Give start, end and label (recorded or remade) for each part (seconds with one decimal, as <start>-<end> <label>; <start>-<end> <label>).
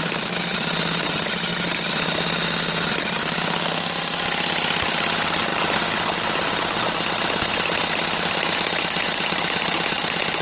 0.0-10.4 recorded